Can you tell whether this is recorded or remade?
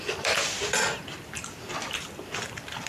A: remade